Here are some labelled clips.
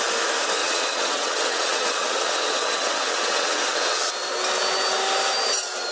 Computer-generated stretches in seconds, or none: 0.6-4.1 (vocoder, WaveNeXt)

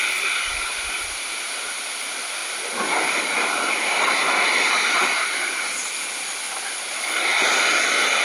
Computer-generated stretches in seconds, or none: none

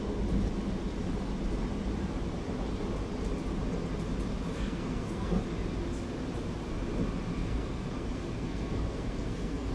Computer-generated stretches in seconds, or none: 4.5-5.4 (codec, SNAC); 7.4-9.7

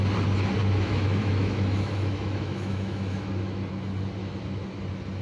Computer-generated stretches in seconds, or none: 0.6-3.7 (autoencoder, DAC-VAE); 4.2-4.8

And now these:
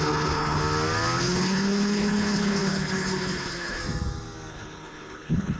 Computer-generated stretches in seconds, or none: 0.0-0.6 (codec, HILCodec); 1.2-3.8; 4.5-5.6

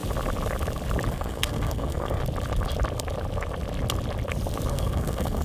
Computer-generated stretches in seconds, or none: 1.1-2.2 (codec, SNAC); 4.7-5.4

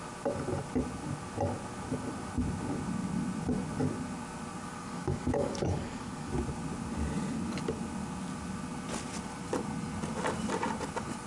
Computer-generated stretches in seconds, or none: 4.6-6.3 (codec, DAC)

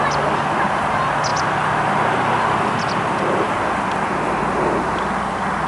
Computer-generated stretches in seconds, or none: none